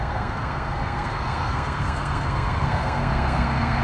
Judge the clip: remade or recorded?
remade